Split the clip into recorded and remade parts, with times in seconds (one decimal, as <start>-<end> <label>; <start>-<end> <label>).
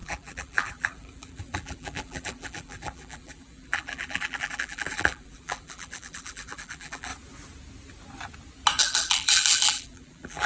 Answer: 0.0-7.1 remade; 7.1-8.8 recorded; 8.8-10.5 remade